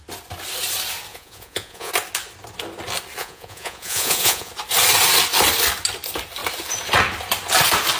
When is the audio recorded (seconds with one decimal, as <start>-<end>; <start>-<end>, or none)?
0.0-1.1; 1.9-3.2; 4.5-8.0